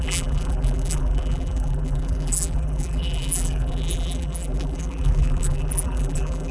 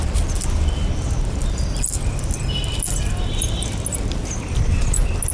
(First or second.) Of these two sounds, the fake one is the first